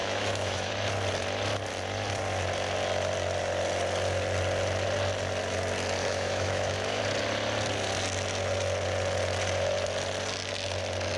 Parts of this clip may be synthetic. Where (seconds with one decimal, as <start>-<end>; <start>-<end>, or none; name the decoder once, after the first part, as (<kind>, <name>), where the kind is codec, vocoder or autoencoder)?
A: 0.0-0.7 (autoencoder, DAC-VAE); 6.0-7.0